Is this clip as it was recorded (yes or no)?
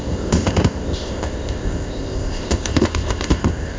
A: no